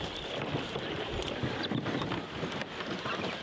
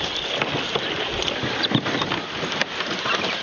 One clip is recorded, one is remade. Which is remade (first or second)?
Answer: first